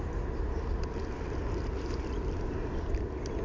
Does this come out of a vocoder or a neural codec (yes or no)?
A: no